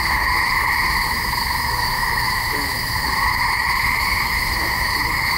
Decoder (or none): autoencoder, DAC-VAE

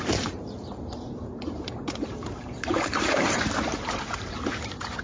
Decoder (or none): vocoder, BigVGAN v2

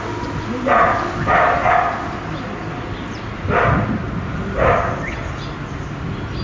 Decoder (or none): none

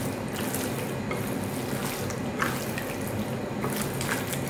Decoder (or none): none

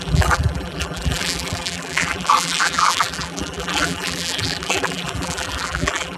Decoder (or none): vocoder, BigVGAN v2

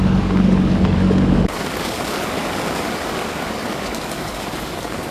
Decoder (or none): codec, DAC